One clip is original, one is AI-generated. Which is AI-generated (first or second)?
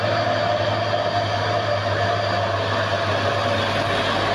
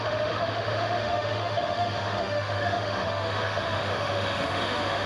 second